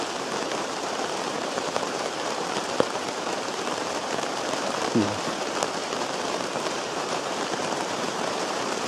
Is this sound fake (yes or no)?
yes